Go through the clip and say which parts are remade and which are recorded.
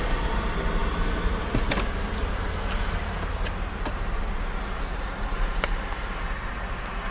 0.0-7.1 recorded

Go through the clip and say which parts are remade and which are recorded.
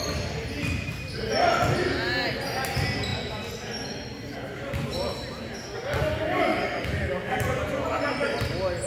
0.0-6.5 recorded; 6.5-7.4 remade; 7.4-8.9 recorded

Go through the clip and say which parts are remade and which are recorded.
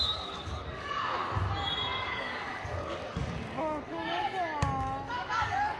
0.0-1.2 remade; 1.2-2.0 recorded; 2.0-5.8 remade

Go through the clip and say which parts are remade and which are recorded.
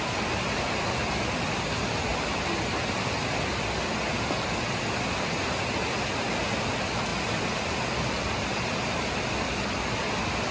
0.0-10.5 recorded